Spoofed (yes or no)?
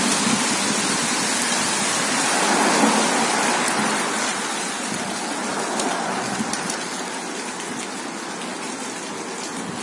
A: no